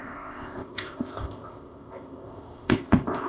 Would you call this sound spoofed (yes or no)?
yes